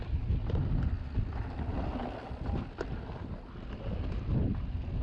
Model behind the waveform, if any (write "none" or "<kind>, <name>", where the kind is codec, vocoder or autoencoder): none